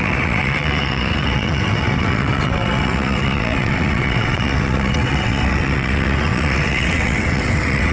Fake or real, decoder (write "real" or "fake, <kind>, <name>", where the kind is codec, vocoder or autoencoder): fake, vocoder, WaveNeXt